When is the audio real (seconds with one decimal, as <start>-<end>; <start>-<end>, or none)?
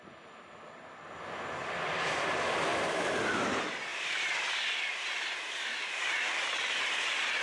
0.0-2.7; 3.2-3.9; 6.0-7.4